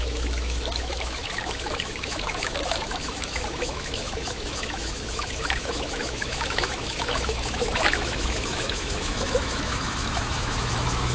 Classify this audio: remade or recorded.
remade